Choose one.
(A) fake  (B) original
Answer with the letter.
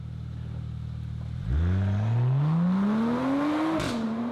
B